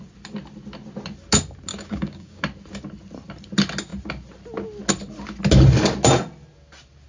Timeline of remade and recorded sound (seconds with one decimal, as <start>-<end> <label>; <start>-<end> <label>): 0.0-1.7 recorded; 1.7-2.4 remade; 2.4-7.1 recorded